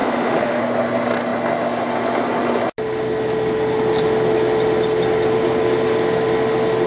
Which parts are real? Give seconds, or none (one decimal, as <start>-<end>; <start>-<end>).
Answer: 0.6-6.9

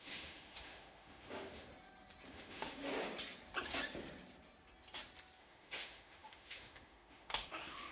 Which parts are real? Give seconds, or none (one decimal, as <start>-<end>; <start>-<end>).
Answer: 1.7-2.3; 2.9-5.4

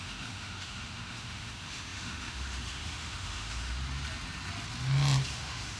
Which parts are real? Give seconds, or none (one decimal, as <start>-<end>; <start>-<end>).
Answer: 3.8-5.3

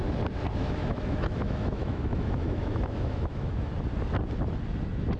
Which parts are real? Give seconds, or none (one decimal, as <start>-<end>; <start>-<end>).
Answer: 0.0-0.6; 3.7-5.2

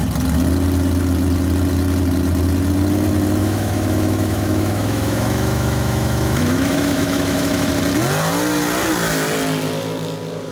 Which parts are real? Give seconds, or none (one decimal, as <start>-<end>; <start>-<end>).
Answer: 0.0-3.4; 7.7-10.5

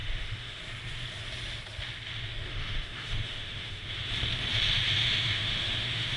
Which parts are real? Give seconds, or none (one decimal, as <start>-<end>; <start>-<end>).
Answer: 0.6-2.5; 4.1-5.0

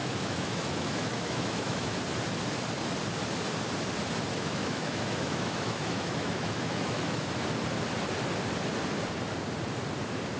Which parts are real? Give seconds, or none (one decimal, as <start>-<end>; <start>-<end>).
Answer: 2.0-4.3; 7.3-10.4

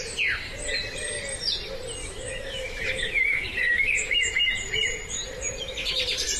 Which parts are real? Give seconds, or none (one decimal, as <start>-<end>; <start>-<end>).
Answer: 0.0-2.0; 4.3-6.4